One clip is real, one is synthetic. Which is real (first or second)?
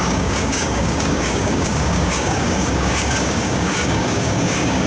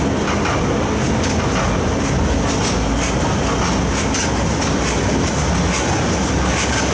second